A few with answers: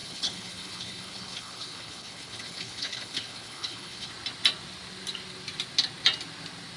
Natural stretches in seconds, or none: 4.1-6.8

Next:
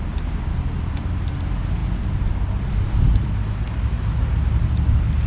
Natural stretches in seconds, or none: 0.0-5.3